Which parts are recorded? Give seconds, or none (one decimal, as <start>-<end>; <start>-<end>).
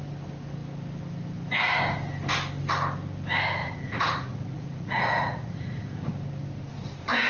0.0-3.6; 6.1-7.3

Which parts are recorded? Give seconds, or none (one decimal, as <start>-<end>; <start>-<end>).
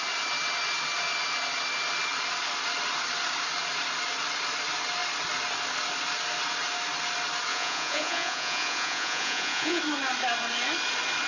0.0-7.5; 9.8-11.3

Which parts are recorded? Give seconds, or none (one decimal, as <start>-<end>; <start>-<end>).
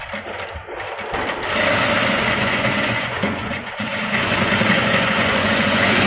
0.0-2.0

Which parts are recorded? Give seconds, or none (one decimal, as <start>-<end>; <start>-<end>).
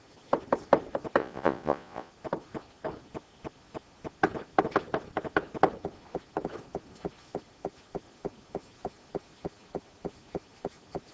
0.0-1.2; 2.1-11.1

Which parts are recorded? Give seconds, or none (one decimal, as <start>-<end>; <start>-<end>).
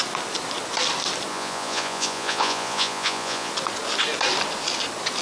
0.0-1.3; 3.5-5.2